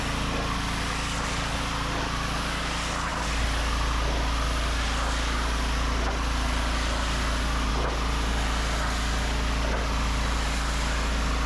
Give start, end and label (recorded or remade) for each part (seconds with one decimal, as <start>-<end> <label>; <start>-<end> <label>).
0.0-11.5 recorded